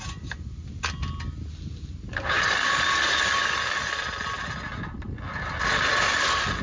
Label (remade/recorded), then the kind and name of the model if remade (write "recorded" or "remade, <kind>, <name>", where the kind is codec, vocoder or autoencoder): recorded